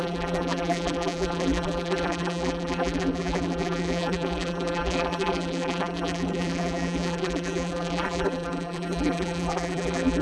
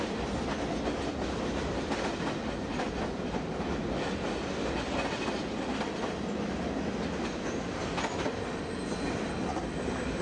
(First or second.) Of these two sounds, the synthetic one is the first